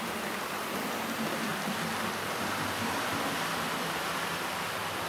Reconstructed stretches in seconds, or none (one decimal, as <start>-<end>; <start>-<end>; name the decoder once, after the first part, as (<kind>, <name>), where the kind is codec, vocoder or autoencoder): 0.0-1.5 (vocoder, BigVGAN v2); 2.4-5.1